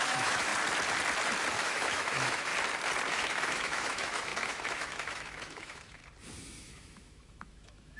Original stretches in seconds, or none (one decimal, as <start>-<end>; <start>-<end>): 0.5-1.6; 2.5-3.1; 6.0-6.6